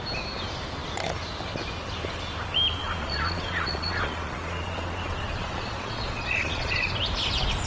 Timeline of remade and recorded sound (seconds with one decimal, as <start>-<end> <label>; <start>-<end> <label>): 0.0-2.8 recorded; 2.8-6.9 remade; 6.9-7.7 recorded